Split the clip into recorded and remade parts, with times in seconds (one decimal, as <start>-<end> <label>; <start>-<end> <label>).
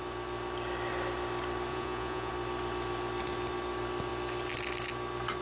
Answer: 0.0-1.7 recorded; 1.7-2.3 remade; 2.3-5.4 recorded